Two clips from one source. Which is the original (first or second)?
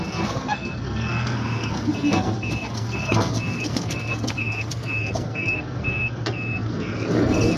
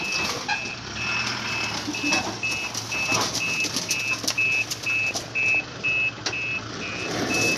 second